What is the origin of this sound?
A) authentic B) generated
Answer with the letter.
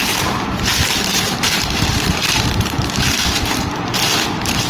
B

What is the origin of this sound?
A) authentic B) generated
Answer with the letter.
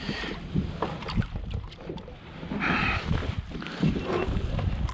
A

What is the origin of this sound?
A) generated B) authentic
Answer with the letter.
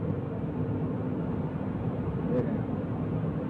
B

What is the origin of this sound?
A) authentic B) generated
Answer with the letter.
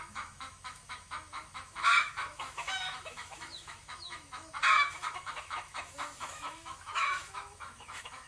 B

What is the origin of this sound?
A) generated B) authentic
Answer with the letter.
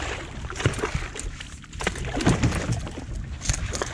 B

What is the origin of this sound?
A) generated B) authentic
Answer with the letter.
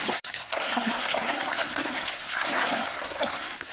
A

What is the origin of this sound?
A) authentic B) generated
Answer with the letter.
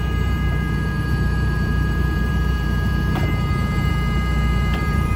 B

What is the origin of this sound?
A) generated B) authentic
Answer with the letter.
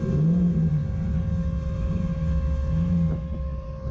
B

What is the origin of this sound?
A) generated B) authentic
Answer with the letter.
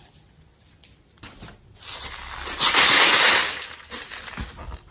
B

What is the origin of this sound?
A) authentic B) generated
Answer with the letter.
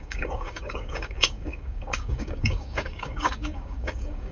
B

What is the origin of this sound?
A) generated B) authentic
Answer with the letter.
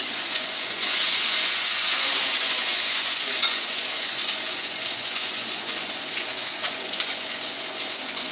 A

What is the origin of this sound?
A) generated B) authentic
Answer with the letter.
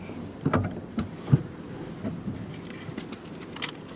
B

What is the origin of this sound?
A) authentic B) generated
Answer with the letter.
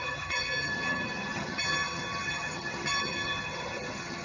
B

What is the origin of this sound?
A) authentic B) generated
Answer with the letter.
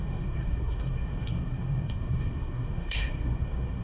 B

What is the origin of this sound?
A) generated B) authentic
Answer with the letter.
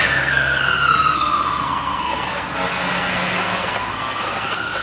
A